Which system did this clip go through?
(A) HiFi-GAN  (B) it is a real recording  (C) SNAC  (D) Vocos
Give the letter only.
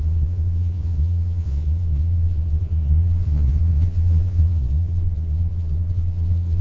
D